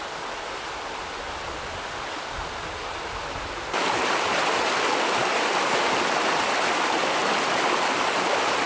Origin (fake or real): real